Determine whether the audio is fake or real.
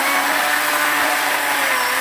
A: real